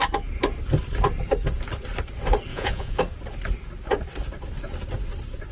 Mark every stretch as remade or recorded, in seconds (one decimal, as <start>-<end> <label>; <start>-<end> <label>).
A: 0.0-2.5 recorded; 2.5-3.0 remade; 3.0-5.5 recorded